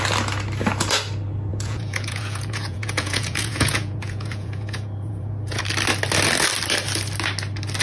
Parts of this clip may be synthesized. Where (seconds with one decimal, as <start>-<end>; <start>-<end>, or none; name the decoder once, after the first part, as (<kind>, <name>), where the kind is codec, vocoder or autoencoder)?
1.5-5.6 (vocoder, Vocos)